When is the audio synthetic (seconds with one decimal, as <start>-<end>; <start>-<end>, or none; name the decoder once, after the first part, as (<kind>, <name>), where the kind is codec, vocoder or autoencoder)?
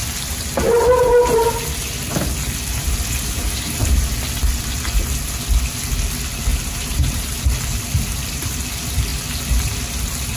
2.7-4.1 (vocoder, BigVGAN v2); 6.5-7.4